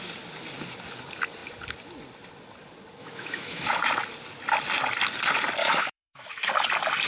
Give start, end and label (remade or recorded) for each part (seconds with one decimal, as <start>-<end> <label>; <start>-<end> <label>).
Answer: 0.0-3.0 recorded; 3.0-3.7 remade; 3.7-5.6 recorded; 5.6-6.5 remade; 6.5-7.1 recorded